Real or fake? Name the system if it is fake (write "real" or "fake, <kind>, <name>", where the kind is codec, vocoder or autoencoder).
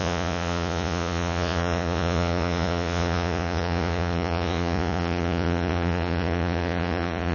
fake, vocoder, Vocos